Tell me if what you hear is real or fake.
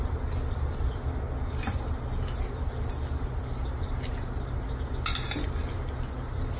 real